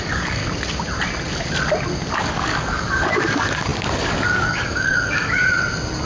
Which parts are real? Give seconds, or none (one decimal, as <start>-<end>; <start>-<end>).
0.4-2.2; 5.4-6.1